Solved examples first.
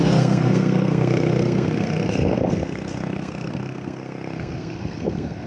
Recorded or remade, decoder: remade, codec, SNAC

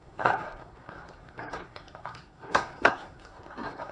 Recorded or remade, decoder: remade, codec, SNAC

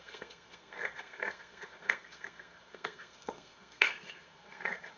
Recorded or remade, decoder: remade, codec, SNAC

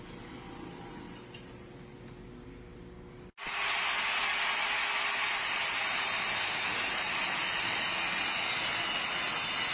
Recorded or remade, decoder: recorded